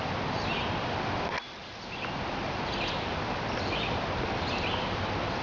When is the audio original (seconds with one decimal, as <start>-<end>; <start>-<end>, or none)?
0.0-1.6; 2.1-5.4